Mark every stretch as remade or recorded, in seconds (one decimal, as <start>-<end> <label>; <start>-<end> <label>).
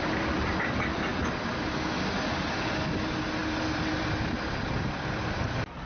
0.0-5.9 recorded